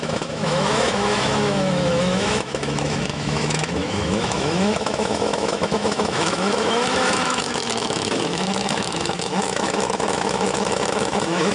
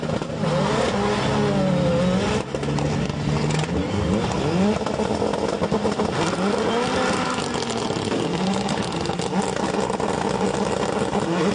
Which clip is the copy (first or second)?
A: first